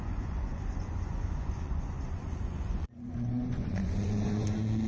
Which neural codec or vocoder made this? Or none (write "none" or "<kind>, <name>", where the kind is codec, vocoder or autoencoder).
vocoder, Vocos